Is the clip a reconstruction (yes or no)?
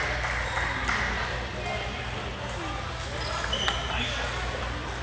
no